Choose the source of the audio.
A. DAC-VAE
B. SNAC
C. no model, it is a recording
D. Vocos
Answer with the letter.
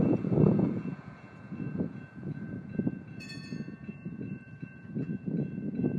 D